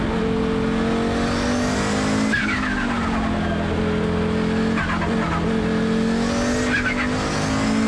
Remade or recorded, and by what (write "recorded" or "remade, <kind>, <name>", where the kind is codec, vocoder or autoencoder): recorded